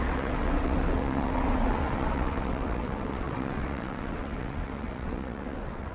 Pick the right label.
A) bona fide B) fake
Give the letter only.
B